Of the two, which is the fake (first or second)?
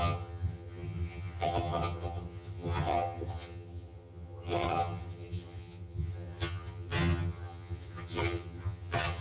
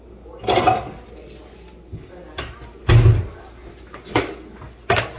first